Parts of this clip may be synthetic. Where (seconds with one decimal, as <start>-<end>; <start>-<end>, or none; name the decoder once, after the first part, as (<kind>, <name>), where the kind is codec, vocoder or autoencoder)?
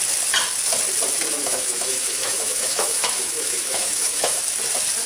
1.3-4.4 (autoencoder, DAC-VAE)